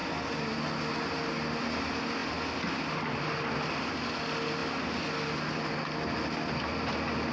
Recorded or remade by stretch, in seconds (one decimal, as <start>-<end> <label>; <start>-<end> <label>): 0.0-7.3 recorded